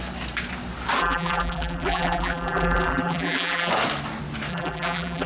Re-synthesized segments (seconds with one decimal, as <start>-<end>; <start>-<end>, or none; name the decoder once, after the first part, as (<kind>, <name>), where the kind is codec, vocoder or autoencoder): 1.0-3.7 (vocoder, BigVGAN v2); 4.5-5.3